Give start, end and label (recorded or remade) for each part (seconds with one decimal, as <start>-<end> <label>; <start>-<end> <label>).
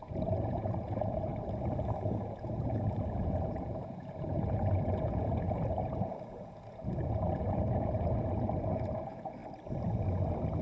0.0-1.3 remade; 1.3-2.0 recorded; 2.0-9.4 remade; 9.4-10.6 recorded